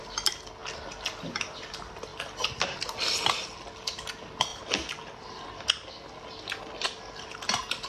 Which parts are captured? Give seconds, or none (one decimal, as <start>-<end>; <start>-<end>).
0.0-2.1; 2.8-7.9